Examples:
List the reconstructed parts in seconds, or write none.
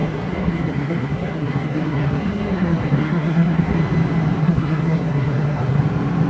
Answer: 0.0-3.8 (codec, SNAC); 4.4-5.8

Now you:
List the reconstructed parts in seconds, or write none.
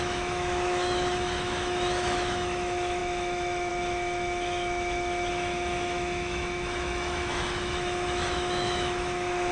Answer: 0.0-9.5 (autoencoder, DAC-VAE)